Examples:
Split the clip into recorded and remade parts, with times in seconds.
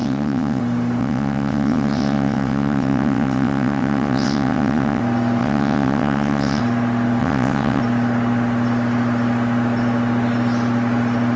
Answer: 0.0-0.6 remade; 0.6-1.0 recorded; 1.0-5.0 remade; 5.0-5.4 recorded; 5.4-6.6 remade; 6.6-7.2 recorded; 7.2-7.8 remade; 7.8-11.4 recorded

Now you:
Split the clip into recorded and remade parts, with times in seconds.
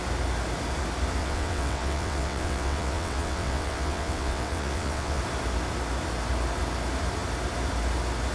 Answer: 0.0-1.2 recorded; 1.2-5.2 remade; 5.2-8.3 recorded